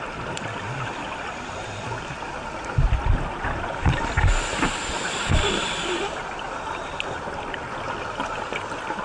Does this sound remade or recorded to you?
recorded